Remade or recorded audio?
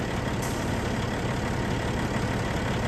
recorded